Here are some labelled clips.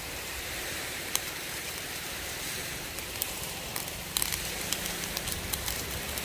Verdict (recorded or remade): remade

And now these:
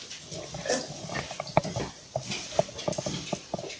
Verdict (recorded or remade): recorded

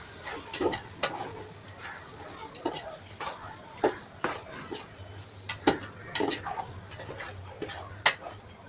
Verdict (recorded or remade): recorded